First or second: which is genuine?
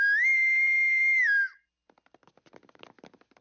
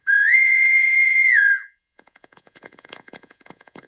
first